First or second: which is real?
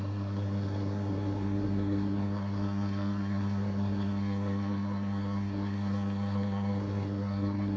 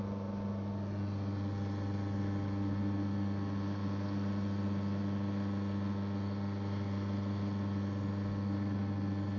second